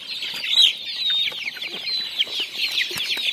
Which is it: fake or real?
real